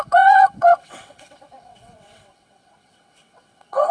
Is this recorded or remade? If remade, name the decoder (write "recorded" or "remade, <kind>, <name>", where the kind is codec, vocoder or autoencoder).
remade, vocoder, WaveNeXt